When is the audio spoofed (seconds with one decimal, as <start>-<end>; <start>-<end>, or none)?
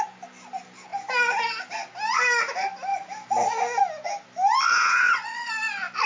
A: 4.7-5.5